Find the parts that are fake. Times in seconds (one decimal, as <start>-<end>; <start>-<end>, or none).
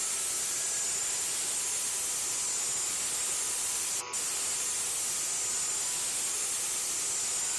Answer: 3.2-3.9